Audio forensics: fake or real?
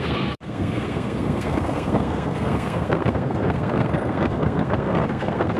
fake